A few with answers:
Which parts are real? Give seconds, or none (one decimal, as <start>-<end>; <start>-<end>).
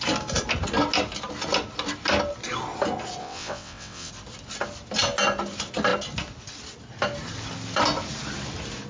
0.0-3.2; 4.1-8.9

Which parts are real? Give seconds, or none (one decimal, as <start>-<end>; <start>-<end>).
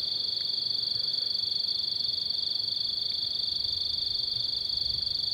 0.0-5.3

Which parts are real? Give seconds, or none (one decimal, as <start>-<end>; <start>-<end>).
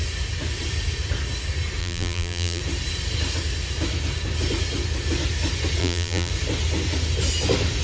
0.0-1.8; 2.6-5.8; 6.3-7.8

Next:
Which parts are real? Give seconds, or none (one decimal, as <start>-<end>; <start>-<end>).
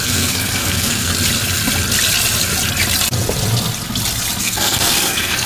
1.1-4.4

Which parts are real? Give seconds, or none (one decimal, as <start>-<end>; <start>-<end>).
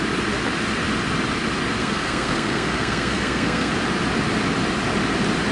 0.0-1.8; 3.7-5.5